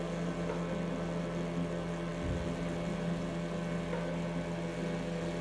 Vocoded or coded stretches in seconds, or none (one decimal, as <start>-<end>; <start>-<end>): none